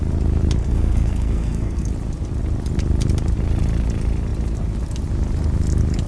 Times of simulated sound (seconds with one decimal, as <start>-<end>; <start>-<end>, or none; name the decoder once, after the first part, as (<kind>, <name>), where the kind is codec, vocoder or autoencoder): 0.6-1.9 (codec, SNAC)